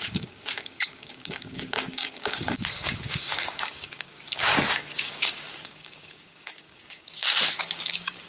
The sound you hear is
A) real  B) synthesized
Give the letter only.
B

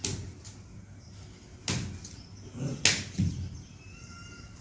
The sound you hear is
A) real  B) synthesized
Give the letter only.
A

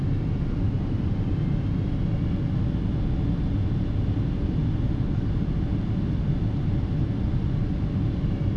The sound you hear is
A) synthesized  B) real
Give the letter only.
B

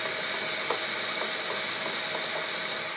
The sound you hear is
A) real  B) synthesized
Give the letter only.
A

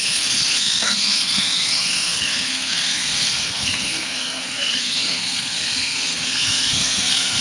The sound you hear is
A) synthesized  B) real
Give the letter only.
A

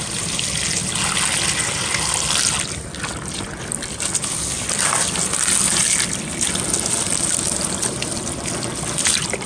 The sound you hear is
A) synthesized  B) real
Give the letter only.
B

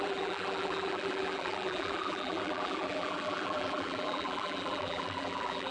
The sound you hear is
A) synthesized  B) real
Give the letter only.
A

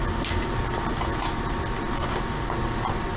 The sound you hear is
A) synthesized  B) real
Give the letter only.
B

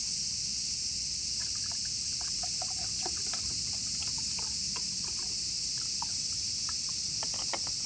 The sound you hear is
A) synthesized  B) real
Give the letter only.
B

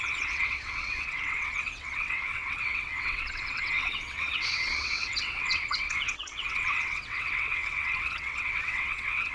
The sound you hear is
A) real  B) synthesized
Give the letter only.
B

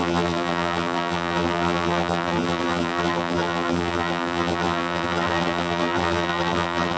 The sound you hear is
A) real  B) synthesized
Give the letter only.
B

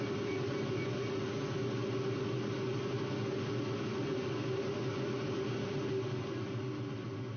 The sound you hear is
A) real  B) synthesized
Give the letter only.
A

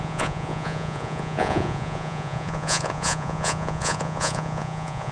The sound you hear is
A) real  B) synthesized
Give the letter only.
B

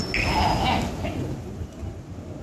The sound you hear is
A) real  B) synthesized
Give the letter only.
A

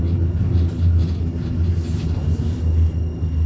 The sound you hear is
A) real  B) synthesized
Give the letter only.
A